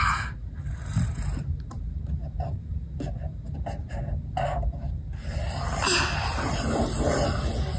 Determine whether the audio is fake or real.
real